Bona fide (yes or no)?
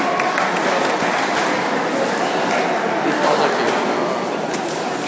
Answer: yes